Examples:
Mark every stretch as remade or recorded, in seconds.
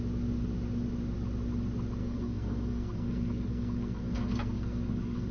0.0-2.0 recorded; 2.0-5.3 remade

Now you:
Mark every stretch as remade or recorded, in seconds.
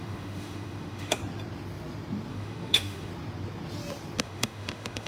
0.0-1.2 remade; 1.2-2.3 recorded; 2.3-3.1 remade; 3.1-4.2 recorded; 4.2-5.1 remade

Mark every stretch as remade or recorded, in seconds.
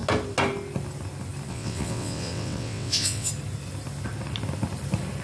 0.0-1.5 recorded; 1.5-3.3 remade; 3.3-5.2 recorded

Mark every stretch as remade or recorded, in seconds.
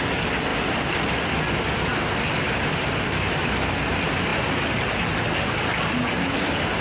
0.0-6.8 recorded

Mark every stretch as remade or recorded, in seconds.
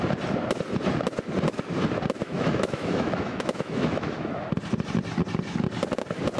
0.0-2.2 recorded; 2.2-4.5 remade; 4.5-6.4 recorded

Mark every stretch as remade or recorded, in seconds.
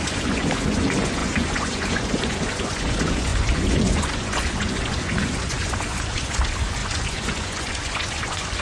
0.0-8.6 remade